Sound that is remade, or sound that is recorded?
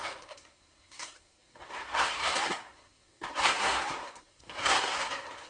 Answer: remade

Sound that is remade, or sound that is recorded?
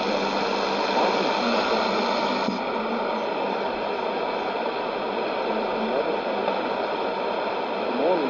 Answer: recorded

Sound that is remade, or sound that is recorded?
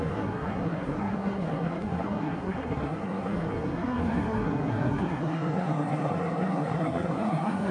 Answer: remade